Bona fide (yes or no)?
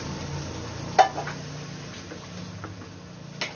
yes